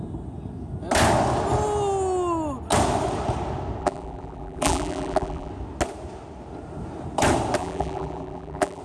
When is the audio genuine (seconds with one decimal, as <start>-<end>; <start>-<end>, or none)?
0.0-3.8; 5.5-7.6